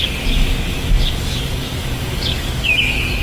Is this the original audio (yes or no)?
no